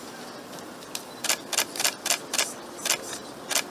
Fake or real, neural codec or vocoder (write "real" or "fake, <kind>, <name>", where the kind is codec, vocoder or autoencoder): real